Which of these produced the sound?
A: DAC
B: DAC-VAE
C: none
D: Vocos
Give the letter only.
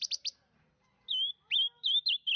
C